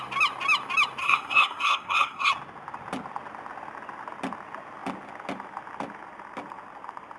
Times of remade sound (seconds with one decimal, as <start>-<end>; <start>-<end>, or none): 1.0-2.3